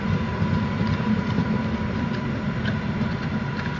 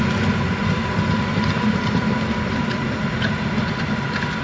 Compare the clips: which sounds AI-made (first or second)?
second